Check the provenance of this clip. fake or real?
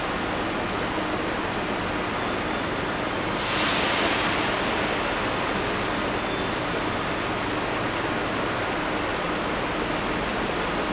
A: real